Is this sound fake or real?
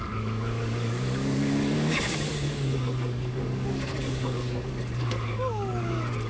fake